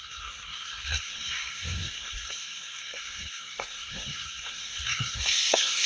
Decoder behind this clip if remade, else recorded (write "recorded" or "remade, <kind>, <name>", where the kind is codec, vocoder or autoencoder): remade, codec, SNAC